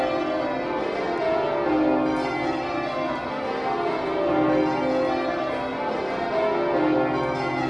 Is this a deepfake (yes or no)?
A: no